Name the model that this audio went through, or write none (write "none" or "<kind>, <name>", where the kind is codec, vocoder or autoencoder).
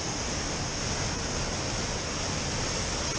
none